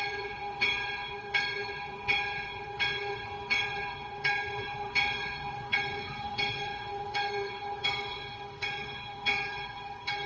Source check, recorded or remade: remade